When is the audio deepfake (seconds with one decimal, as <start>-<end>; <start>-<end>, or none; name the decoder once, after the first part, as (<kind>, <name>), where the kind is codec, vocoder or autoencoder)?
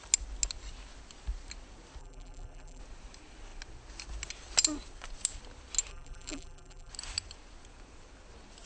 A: 2.0-2.8 (vocoder, BigVGAN v2); 5.9-6.9